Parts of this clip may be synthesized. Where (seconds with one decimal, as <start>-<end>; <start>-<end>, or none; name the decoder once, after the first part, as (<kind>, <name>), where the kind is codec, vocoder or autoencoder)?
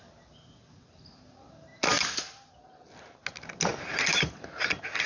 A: none